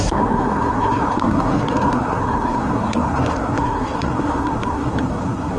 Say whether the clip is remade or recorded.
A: remade